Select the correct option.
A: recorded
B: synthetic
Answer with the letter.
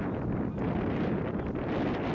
A